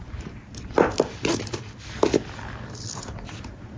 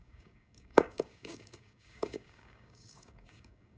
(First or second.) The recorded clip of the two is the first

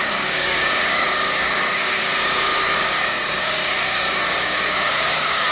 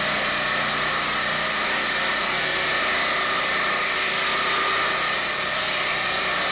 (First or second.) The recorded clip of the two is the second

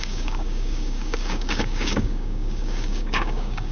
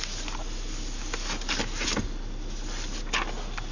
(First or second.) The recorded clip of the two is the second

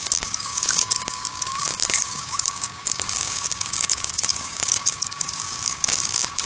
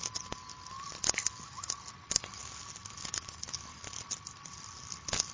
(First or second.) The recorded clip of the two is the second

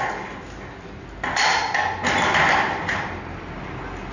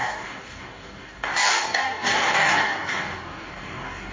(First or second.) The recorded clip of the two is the first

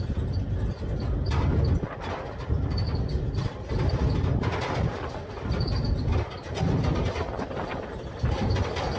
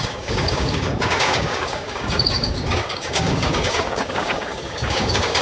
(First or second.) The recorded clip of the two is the first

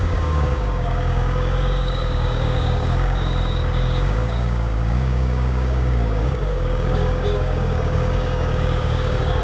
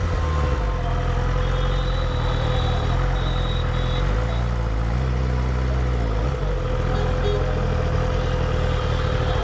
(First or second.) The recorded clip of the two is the second